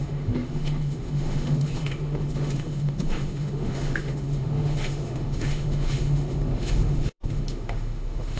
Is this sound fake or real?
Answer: fake